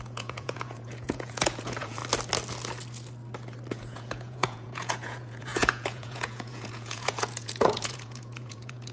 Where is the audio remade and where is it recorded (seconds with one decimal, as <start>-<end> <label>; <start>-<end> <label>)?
0.0-2.0 remade; 2.0-3.7 recorded; 3.7-8.9 remade